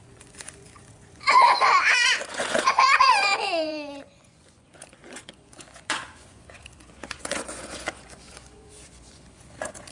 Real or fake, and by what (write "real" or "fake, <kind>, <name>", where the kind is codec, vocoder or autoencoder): fake, vocoder, Vocos